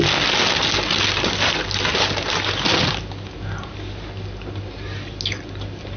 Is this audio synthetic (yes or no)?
no